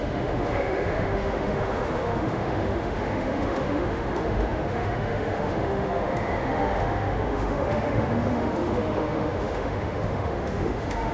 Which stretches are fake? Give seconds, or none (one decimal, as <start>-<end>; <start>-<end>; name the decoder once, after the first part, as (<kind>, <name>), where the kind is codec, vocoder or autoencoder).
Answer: 0.0-11.1 (autoencoder, DAC-VAE)